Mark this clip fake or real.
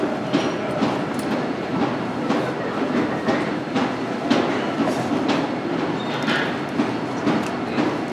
real